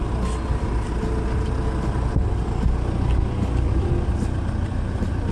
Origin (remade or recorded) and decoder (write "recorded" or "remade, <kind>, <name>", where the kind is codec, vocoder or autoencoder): recorded